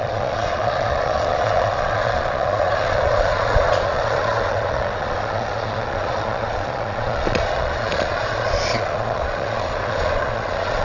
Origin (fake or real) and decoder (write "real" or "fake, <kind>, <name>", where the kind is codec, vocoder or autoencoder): fake, vocoder, Vocos